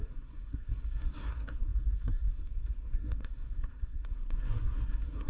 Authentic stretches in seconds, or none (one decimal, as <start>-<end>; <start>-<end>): none